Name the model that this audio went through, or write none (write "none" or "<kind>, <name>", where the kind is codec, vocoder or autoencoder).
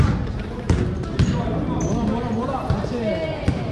none